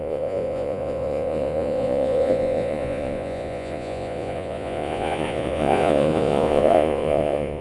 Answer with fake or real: fake